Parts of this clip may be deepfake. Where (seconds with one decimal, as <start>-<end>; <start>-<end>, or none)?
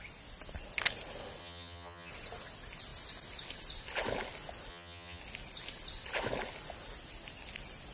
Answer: 1.4-2.1; 4.7-5.2